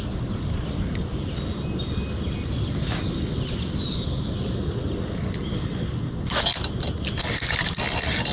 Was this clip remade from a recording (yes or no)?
no